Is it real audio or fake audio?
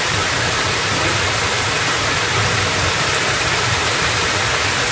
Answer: fake